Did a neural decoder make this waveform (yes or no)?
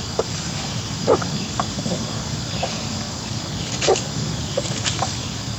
yes